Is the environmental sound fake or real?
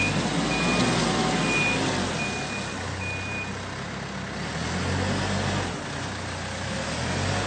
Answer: real